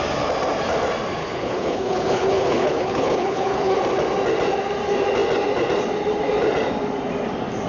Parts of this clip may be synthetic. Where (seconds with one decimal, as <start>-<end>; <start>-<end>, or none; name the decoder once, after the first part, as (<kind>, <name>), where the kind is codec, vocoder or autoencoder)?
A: 1.2-3.8 (codec, HILCodec)